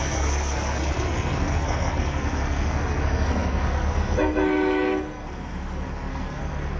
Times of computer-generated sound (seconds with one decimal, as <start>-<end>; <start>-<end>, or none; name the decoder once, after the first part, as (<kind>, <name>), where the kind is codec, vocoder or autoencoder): 0.0-6.8 (codec, SNAC)